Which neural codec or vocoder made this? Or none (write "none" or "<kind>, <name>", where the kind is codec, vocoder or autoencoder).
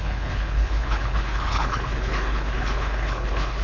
codec, HILCodec